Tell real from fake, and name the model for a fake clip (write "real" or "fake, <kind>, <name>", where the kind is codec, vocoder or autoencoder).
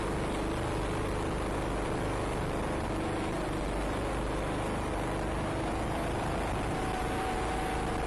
real